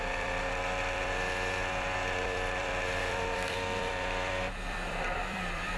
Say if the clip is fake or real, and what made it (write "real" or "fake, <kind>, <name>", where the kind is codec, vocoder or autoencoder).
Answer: fake, vocoder, BigVGAN v2